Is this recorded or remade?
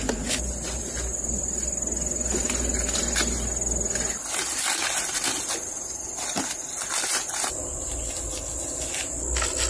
recorded